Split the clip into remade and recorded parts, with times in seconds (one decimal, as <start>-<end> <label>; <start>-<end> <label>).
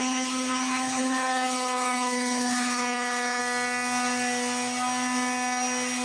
0.0-3.4 remade; 3.4-6.0 recorded